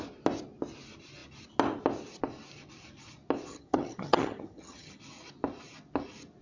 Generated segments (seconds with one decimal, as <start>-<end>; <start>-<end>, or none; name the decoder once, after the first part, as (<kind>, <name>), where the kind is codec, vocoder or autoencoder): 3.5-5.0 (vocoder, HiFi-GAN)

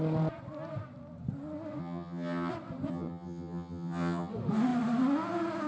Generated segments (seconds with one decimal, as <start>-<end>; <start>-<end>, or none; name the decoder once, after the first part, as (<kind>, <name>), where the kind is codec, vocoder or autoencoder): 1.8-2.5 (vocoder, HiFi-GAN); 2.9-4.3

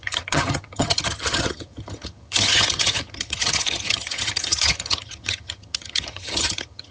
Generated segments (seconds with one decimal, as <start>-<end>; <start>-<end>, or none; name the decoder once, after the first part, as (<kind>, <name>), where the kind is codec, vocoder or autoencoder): 0.0-6.9 (vocoder, HiFi-GAN)